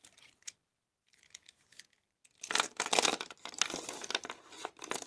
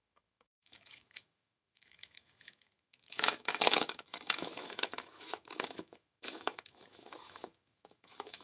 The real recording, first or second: first